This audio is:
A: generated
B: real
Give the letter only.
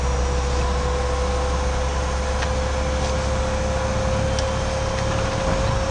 B